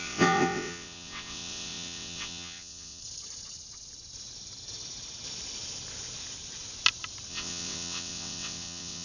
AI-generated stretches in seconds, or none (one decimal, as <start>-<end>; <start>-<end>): 0.0-3.0; 7.3-9.0

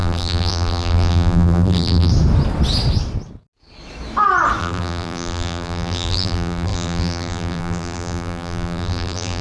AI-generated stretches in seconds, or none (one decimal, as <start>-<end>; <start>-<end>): 0.0-2.1; 4.6-9.4

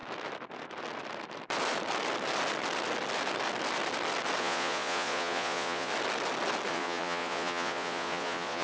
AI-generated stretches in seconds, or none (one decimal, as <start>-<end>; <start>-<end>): 4.4-5.9; 6.7-8.6

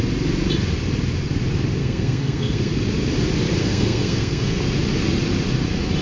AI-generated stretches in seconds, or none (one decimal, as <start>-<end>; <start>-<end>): 1.8-2.7; 3.6-4.6

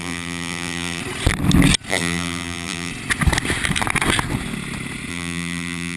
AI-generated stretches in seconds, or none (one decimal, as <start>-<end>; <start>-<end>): 0.0-1.0; 1.9-2.9; 5.1-6.0

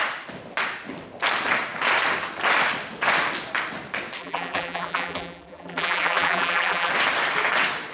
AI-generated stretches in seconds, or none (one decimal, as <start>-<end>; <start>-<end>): 4.2-6.9